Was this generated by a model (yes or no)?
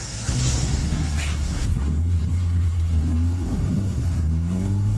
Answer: yes